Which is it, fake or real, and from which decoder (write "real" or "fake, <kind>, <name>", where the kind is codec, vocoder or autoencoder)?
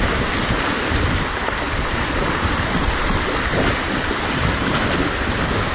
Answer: real